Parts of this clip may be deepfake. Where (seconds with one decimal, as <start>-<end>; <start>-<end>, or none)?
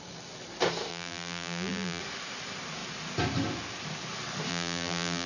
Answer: 0.9-2.0; 4.5-5.3